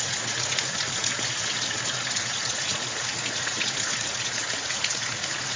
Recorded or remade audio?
remade